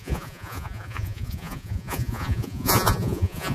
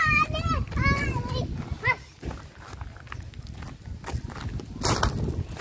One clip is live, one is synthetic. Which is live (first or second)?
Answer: second